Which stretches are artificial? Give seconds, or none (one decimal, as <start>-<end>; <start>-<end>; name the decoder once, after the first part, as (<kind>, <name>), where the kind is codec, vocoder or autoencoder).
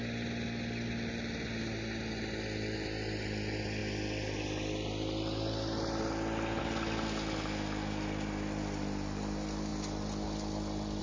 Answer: none